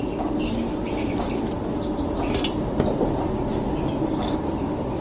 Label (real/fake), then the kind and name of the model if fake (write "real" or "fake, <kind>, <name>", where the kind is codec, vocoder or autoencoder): real